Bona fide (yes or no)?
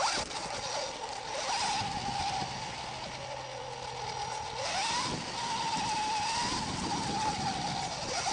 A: yes